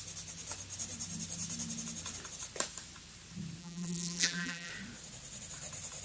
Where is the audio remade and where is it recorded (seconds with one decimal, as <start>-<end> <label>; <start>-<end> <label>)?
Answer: 0.0-3.6 recorded; 3.6-4.7 remade; 4.7-6.0 recorded